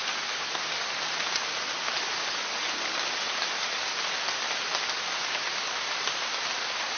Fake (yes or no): no